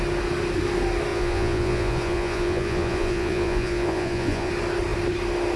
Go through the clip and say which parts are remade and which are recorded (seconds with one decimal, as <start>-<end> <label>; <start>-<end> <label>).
0.0-1.1 recorded; 1.1-4.5 remade; 4.5-5.6 recorded